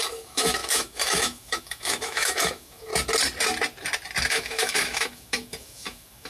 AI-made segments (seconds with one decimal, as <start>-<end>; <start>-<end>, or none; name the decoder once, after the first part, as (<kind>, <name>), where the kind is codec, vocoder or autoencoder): 0.0-2.9 (autoencoder, DAC-VAE); 4.3-6.3